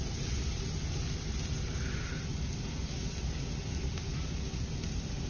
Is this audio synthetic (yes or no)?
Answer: no